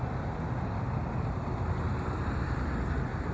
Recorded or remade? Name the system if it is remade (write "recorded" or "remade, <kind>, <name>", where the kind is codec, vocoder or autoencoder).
recorded